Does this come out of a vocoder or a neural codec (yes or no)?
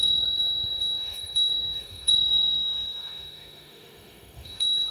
yes